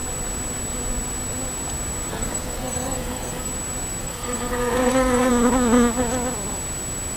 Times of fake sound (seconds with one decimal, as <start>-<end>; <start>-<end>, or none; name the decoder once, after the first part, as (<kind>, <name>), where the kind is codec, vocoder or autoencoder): 2.1-3.5 (codec, SNAC); 4.0-5.3